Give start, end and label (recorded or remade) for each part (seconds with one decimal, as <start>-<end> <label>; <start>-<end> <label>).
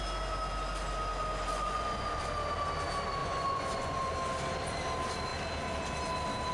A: 0.0-1.5 recorded; 1.5-2.3 remade; 2.3-3.2 recorded; 3.2-4.1 remade; 4.1-6.5 recorded